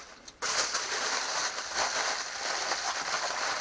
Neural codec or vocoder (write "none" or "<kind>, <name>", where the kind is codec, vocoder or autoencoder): none